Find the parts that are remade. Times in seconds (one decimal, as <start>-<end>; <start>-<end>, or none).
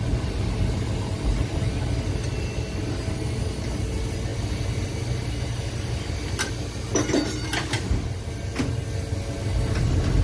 none